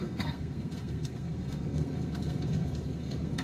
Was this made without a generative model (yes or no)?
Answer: no